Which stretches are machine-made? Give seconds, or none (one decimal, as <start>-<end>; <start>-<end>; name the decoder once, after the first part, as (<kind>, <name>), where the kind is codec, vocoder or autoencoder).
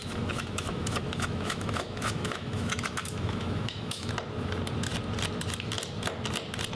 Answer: 0.0-4.1 (autoencoder, DAC-VAE)